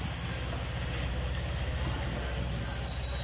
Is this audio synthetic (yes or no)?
no